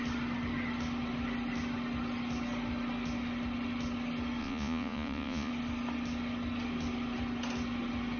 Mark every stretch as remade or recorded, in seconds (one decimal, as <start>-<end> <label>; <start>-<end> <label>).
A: 0.0-4.4 recorded; 4.4-5.5 remade; 5.5-8.2 recorded